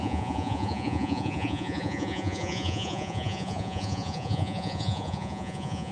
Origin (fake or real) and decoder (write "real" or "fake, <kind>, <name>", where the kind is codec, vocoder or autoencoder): fake, vocoder, Vocos